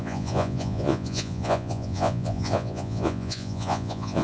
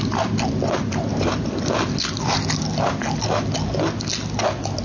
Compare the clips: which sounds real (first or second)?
second